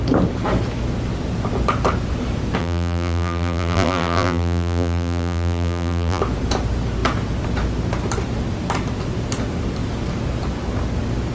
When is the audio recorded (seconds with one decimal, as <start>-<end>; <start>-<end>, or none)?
0.0-2.6; 6.2-11.3